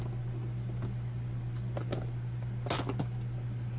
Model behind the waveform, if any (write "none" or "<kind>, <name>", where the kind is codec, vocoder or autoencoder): none